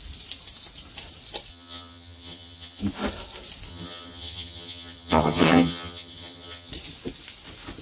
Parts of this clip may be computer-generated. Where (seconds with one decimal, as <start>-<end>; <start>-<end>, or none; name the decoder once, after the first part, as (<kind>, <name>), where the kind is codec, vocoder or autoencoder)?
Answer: 1.5-2.8 (vocoder, HiFi-GAN); 3.7-6.7